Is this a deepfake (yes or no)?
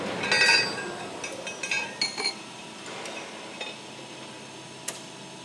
no